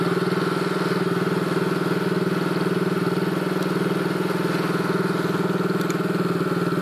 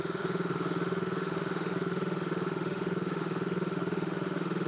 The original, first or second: first